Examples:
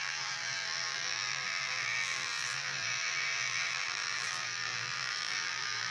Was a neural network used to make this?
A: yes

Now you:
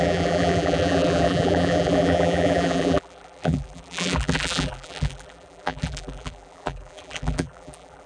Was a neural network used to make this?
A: yes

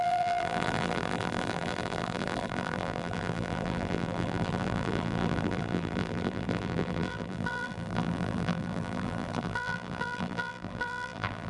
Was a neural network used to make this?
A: yes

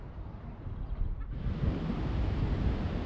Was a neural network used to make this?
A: no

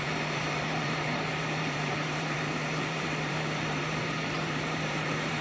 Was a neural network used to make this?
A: yes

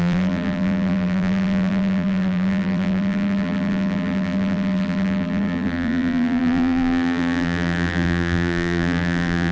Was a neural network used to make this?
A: yes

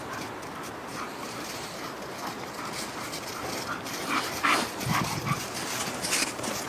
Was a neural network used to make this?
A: no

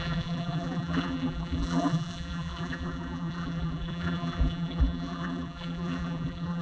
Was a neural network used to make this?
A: yes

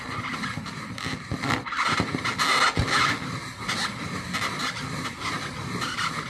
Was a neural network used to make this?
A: no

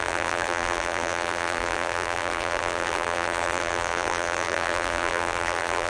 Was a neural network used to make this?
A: yes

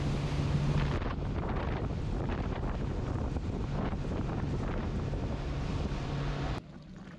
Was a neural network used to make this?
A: no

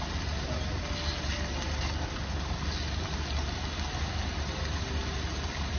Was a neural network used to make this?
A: no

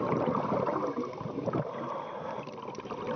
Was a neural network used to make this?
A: yes